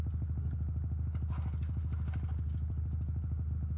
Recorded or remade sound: recorded